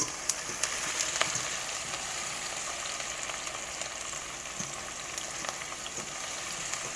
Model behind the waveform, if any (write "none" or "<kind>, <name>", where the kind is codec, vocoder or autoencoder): none